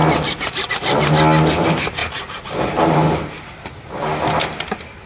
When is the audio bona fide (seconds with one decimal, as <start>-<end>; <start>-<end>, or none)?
0.0-2.0; 3.5-5.1